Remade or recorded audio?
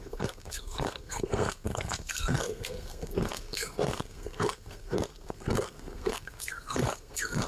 remade